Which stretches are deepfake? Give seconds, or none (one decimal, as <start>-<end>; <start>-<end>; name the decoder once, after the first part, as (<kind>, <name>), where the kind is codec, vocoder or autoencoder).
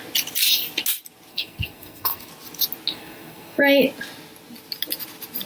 1.3-2.3 (codec, SNAC); 2.9-3.6